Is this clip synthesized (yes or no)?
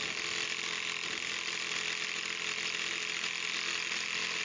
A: no